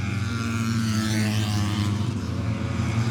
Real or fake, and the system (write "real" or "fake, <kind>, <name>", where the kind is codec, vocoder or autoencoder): fake, vocoder, BigVGAN v2